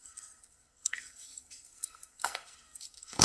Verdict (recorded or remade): remade